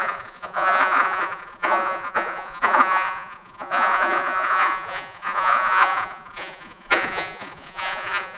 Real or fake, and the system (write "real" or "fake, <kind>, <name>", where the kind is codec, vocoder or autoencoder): fake, vocoder, Vocos